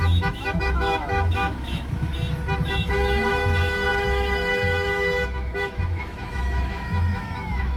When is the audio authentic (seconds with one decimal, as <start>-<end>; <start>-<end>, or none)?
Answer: 2.1-2.6